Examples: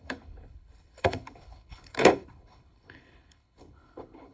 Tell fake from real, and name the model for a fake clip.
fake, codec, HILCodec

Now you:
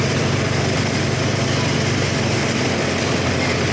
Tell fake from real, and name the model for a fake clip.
fake, vocoder, BigVGAN v2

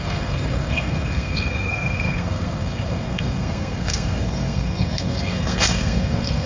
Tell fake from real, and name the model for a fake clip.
fake, codec, SNAC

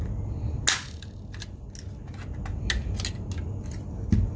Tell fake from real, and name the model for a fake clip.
real